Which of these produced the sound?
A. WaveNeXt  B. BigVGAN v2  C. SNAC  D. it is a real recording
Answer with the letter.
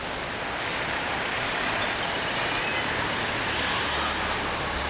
D